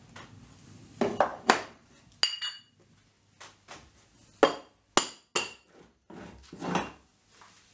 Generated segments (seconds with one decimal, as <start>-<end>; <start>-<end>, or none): 1.3-2.1